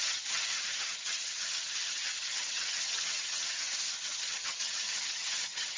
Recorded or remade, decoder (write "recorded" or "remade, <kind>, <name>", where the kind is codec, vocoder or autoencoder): remade, vocoder, HiFi-GAN